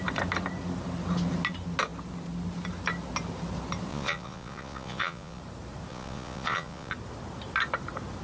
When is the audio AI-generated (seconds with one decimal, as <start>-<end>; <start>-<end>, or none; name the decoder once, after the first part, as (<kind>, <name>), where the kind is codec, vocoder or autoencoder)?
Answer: 3.9-5.4 (vocoder, Vocos); 5.9-6.9